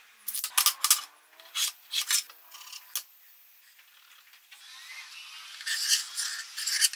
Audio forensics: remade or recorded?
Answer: recorded